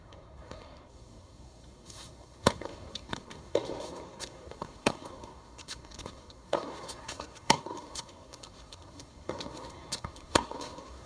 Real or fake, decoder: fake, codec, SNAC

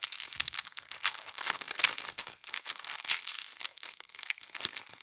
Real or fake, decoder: fake, codec, SNAC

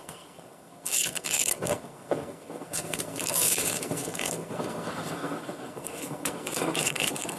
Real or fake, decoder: fake, codec, SNAC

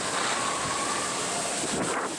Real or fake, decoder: real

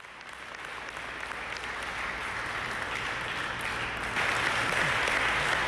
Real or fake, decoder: real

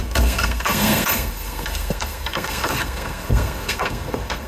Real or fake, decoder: fake, codec, SNAC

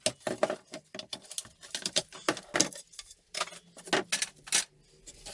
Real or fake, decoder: real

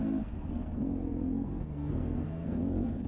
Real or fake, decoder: fake, codec, SNAC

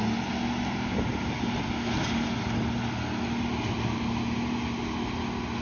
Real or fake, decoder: real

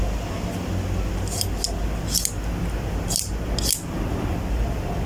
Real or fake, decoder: real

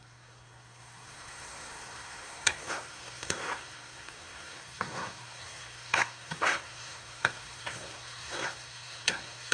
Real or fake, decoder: fake, codec, SNAC